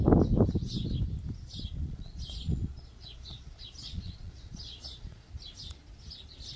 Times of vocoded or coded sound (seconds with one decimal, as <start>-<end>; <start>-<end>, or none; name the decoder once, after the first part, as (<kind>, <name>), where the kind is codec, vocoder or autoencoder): 1.8-5.3 (vocoder, Vocos)